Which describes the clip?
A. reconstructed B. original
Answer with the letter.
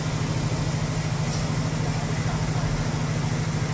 B